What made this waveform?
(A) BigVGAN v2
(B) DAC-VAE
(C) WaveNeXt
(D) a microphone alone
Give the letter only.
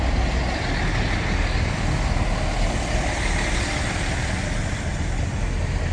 D